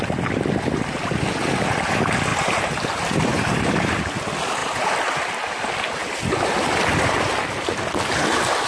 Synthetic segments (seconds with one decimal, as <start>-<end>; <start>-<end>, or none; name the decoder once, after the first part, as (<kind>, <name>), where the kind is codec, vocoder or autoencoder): 2.3-4.0 (vocoder, BigVGAN v2); 4.6-5.5